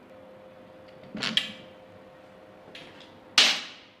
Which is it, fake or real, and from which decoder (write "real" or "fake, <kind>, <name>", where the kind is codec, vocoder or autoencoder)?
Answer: real